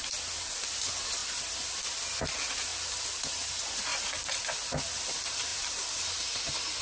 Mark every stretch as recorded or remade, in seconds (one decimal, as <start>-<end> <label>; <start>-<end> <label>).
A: 0.0-3.9 recorded; 3.9-4.4 remade; 4.4-5.5 recorded; 5.5-6.0 remade; 6.0-6.8 recorded